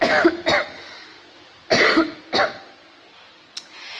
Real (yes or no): yes